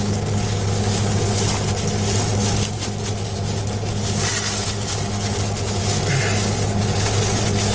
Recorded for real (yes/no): yes